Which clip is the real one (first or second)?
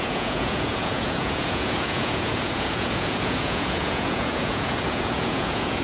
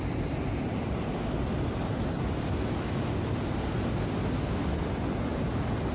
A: second